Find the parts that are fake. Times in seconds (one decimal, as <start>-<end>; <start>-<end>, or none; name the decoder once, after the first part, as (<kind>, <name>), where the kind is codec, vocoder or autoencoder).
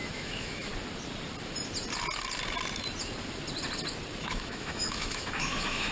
0.0-0.7 (autoencoder, DAC-VAE); 4.2-5.9